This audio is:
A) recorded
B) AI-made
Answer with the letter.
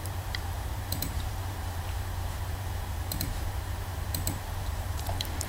B